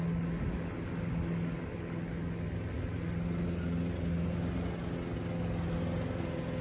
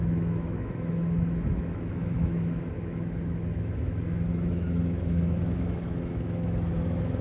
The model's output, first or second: second